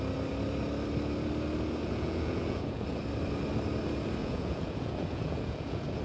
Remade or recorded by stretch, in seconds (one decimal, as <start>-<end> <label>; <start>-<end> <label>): 0.0-1.8 recorded; 1.8-3.0 remade; 3.0-4.2 recorded; 4.2-6.0 remade